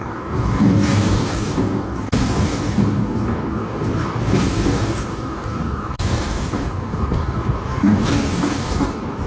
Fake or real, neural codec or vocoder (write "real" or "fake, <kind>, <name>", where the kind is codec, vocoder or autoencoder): fake, codec, DAC